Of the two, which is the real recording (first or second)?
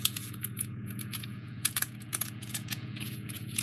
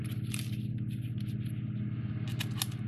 second